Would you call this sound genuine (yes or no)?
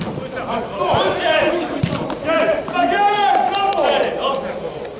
yes